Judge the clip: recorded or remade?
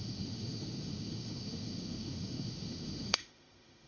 remade